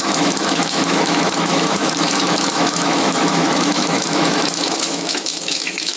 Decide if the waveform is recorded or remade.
remade